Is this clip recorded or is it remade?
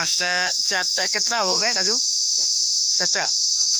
remade